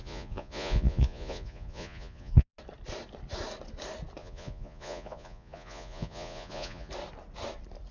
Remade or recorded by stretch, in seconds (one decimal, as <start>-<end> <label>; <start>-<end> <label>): 0.0-2.5 remade; 2.5-4.2 recorded; 4.2-6.9 remade; 6.9-7.9 recorded